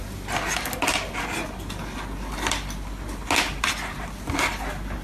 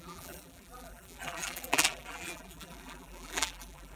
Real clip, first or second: first